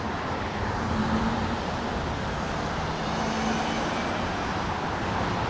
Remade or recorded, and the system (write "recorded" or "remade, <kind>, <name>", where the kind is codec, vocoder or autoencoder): recorded